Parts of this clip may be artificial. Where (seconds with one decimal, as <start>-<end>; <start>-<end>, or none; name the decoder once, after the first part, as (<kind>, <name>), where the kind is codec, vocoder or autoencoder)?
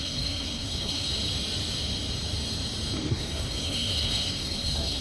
0.0-1.1 (codec, SNAC); 3.1-5.0